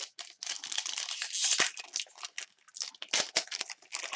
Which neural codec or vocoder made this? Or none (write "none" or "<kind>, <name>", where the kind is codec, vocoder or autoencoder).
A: none